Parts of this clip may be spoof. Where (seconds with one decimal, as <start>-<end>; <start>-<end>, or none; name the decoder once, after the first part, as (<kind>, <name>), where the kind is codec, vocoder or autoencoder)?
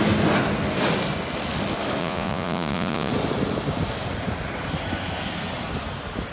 2.0-3.1 (vocoder, Vocos)